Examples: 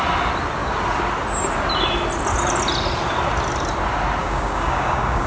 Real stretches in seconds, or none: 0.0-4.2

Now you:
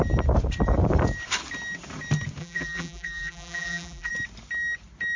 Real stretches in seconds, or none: 0.0-2.4; 4.1-5.2